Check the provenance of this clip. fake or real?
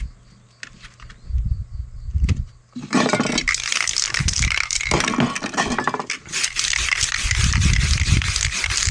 real